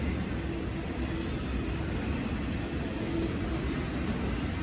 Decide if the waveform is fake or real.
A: real